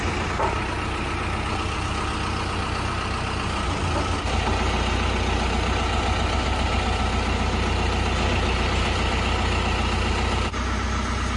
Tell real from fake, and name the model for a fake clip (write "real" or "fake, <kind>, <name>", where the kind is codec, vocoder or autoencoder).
real